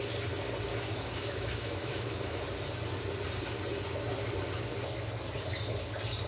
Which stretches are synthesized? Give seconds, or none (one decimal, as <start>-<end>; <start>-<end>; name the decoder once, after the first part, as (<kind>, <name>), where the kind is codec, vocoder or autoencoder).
0.7-2.4 (autoencoder, DAC-VAE)